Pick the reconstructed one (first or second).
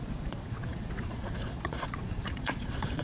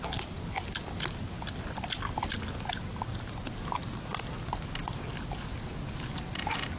first